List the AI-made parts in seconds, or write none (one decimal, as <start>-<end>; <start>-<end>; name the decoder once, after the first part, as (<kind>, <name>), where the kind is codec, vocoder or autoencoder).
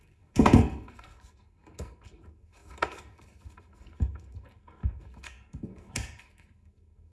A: 0.0-7.1 (codec, SNAC)